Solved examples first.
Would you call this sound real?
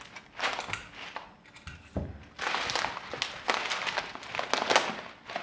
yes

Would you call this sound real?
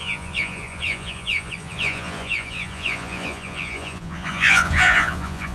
no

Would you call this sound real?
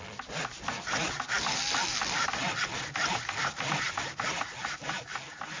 yes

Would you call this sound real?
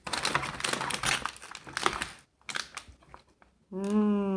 yes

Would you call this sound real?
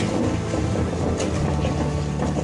yes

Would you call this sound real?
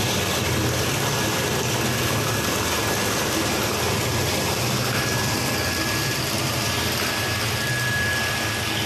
yes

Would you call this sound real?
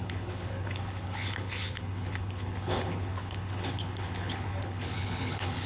no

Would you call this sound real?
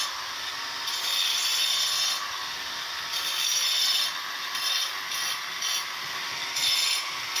yes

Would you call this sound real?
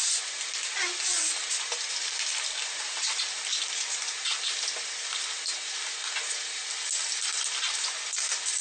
yes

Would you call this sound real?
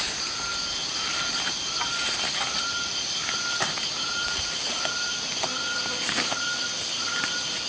yes